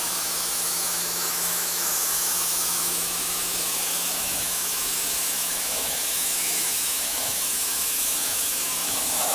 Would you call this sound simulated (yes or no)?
yes